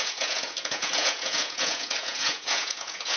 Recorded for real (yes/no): no